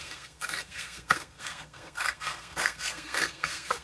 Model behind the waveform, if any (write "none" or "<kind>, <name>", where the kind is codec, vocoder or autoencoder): codec, SNAC